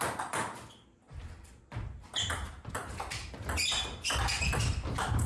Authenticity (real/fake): real